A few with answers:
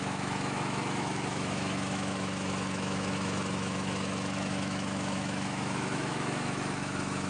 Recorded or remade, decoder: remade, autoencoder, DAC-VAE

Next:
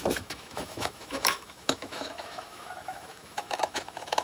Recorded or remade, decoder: remade, autoencoder, DAC-VAE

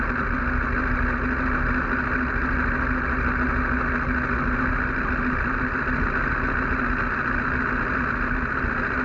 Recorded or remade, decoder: recorded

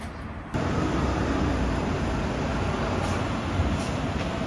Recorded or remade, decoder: recorded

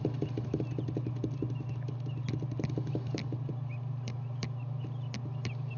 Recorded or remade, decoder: remade, vocoder, BigVGAN v2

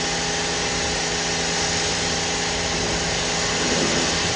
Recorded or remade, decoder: recorded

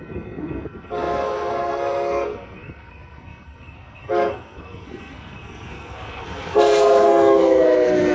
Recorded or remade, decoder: remade, codec, SNAC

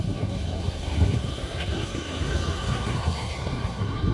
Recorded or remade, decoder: remade, codec, SNAC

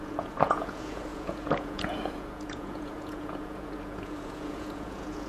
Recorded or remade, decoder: remade, vocoder, Vocos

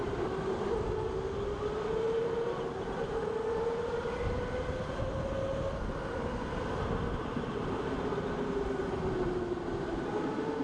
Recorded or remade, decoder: recorded